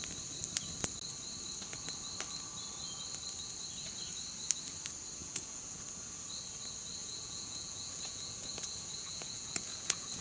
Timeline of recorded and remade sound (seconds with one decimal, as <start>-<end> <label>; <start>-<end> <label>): 0.0-5.2 recorded; 5.2-5.8 remade; 5.8-7.0 recorded; 7.0-10.2 remade